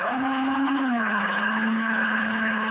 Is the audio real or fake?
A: fake